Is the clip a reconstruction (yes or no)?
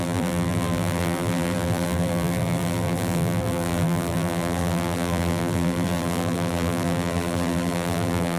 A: yes